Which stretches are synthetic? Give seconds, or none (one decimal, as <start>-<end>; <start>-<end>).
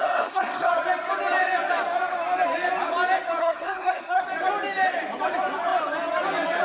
0.0-0.7; 3.4-4.2